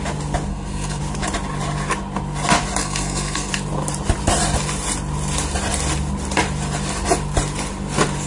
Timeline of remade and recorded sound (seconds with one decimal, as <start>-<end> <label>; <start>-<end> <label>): 0.0-0.5 recorded; 0.5-1.0 remade; 1.0-2.8 recorded; 2.8-3.5 remade; 3.5-8.3 recorded